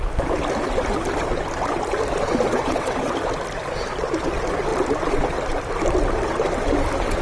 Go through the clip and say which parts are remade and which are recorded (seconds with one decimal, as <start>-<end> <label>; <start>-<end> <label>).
0.0-2.5 recorded; 2.5-3.1 remade; 3.1-7.2 recorded